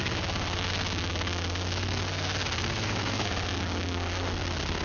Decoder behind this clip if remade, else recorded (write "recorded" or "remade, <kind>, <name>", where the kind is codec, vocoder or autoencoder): remade, codec, SNAC